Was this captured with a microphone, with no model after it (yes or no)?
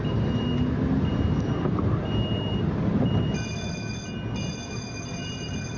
yes